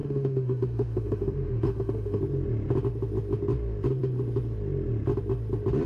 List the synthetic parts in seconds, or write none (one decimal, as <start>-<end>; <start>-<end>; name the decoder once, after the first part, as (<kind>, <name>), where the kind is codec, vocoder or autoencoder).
0.0-2.2 (autoencoder, DAC-VAE)